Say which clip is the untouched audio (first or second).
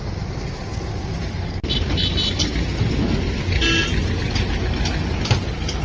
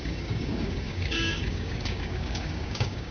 first